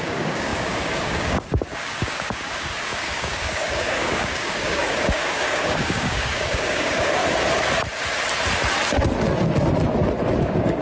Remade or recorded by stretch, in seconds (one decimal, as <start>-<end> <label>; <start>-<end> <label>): 0.0-7.2 remade; 7.2-10.4 recorded; 10.4-10.8 remade